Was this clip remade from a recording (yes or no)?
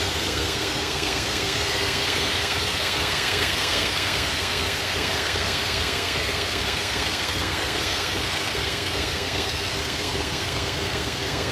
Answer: yes